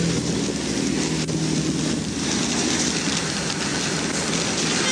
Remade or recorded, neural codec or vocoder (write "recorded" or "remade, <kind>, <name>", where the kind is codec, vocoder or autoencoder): recorded